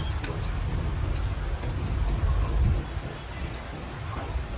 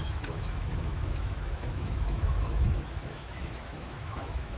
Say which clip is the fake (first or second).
second